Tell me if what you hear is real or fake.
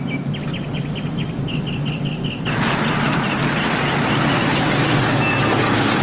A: real